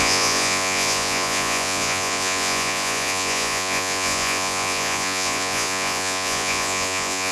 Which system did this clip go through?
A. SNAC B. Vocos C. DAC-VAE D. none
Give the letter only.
B